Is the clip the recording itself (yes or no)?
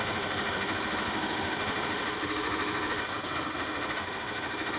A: no